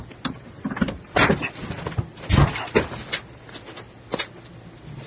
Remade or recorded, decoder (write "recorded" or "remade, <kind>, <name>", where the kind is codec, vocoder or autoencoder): recorded